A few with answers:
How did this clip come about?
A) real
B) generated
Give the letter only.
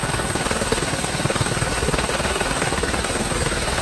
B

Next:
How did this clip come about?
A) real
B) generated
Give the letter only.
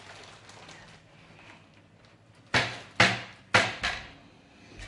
A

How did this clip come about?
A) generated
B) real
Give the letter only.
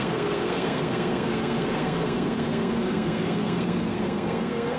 A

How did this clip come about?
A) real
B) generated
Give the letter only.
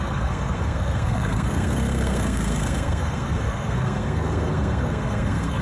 B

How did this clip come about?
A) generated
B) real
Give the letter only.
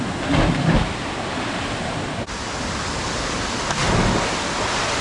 B